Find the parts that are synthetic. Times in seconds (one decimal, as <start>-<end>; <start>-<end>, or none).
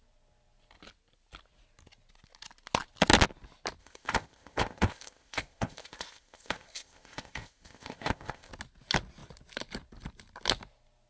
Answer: 3.8-8.5